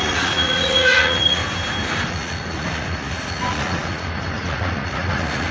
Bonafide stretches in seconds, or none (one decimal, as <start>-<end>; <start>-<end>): 1.4-2.1